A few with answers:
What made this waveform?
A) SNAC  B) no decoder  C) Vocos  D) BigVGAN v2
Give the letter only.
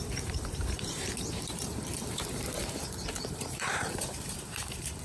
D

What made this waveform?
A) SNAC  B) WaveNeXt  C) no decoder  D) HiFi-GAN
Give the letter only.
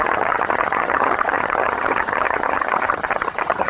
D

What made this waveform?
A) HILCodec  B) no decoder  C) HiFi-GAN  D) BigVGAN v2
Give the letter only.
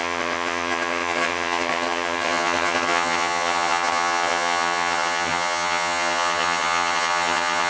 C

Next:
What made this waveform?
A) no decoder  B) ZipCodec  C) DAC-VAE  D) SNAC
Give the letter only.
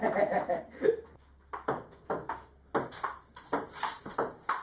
A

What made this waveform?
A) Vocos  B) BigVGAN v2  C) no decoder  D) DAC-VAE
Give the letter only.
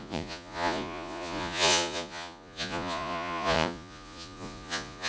A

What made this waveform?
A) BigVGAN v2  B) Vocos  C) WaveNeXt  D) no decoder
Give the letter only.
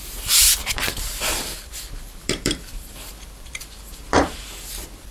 A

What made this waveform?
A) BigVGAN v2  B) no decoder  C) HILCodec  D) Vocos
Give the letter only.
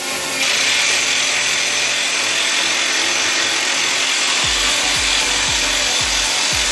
B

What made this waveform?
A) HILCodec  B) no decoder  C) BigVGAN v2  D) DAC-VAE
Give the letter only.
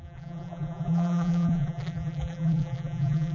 C